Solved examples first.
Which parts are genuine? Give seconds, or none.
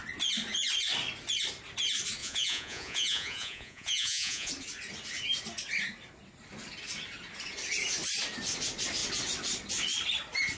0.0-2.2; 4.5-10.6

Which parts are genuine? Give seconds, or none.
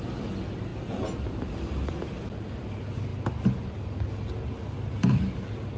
0.0-5.8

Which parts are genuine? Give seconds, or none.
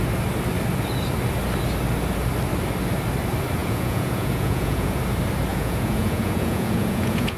0.0-3.6; 5.0-5.5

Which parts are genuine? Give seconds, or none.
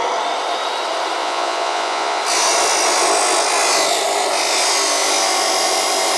0.0-1.2; 2.2-6.2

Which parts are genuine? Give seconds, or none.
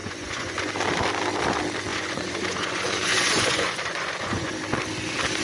0.7-1.9; 4.5-5.4